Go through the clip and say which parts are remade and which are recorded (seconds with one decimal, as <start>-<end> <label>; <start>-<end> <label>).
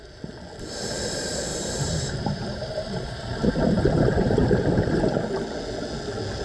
0.0-1.5 recorded; 1.5-4.8 remade; 4.8-6.4 recorded